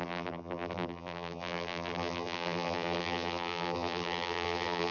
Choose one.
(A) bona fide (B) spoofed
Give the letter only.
B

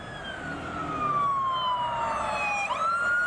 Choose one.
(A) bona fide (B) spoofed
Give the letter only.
A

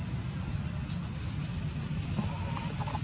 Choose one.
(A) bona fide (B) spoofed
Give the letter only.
A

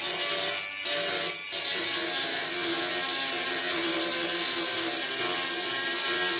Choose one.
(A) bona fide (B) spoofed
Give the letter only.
A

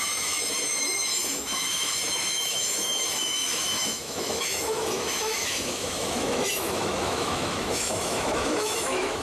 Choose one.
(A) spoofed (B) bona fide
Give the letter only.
A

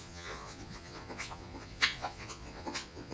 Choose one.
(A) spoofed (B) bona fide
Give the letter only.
A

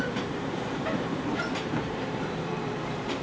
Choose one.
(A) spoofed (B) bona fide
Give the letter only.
A